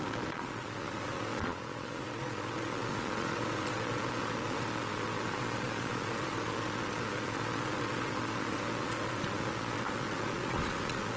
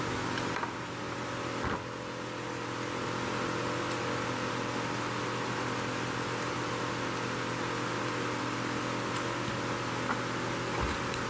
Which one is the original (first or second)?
second